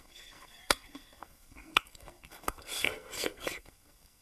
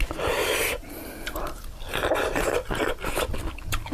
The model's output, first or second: first